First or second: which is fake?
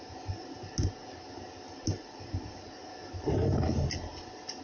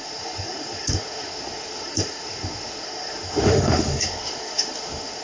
second